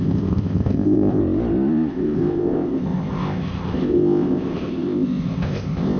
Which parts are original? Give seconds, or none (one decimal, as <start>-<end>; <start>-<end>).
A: 1.2-1.9